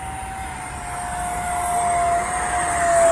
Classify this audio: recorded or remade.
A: recorded